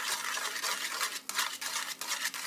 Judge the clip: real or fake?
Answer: real